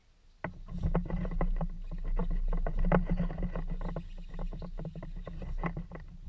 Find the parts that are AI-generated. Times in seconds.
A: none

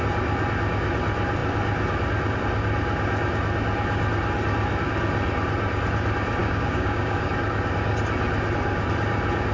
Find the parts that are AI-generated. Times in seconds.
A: 6.4-7.3 (codec, DAC)

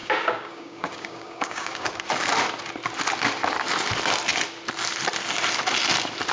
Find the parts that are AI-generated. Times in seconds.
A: 0.0-1.9 (codec, DAC)

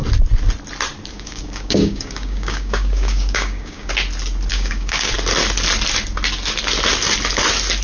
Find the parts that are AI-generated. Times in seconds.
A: 1.1-3.9 (codec, DAC); 4.5-5.1

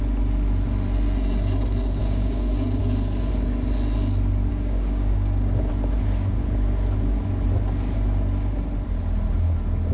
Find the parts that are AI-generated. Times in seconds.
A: 2.0-2.8 (codec, DAC); 4.5-5.7